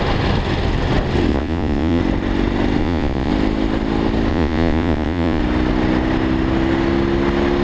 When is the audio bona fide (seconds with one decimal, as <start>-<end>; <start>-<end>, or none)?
0.0-1.3; 2.0-2.8; 3.3-4.3; 5.4-7.6